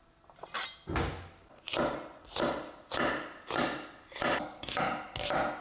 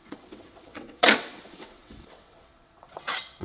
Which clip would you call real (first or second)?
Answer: first